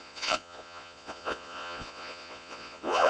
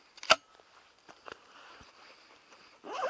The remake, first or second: first